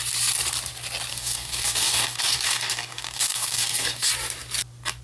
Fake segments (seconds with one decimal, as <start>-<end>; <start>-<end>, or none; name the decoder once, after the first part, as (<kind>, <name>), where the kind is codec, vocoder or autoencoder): 1.1-4.1 (codec, DAC)